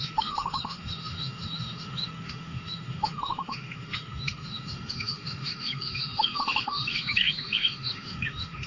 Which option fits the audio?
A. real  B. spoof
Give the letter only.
B